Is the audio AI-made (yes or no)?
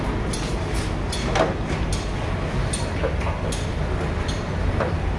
no